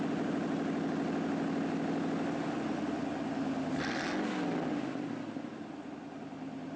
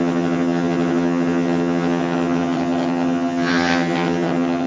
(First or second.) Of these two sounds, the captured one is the first